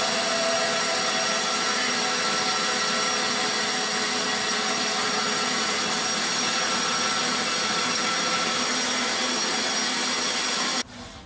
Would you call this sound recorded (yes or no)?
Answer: yes